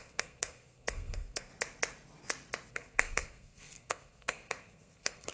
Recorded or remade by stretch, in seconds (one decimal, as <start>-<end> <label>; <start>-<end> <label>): 0.0-1.5 remade; 1.5-2.7 recorded; 2.7-5.3 remade